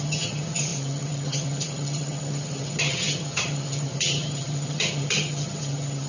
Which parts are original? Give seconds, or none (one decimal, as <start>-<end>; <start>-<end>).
none